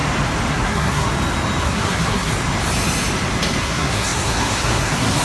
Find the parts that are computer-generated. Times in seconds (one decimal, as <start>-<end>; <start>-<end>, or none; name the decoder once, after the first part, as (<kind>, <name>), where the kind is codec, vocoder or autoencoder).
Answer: 0.5-1.1 (codec, SNAC); 1.6-2.3; 3.6-5.2